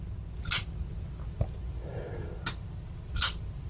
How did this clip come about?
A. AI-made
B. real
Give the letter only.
B